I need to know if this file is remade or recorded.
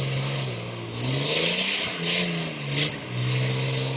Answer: recorded